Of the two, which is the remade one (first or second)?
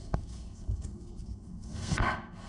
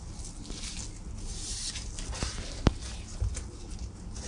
first